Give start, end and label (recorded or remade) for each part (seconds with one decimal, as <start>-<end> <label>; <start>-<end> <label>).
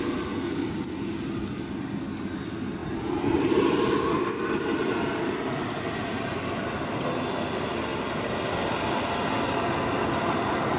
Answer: 0.0-10.8 recorded